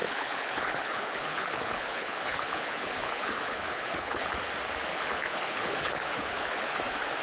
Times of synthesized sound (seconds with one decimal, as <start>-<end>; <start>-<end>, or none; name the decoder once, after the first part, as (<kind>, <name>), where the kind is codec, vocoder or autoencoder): 0.0-4.3 (codec, HILCodec); 4.9-6.8